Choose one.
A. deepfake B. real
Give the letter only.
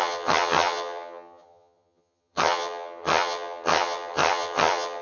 A